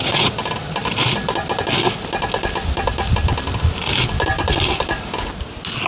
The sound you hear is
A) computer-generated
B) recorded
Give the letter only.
B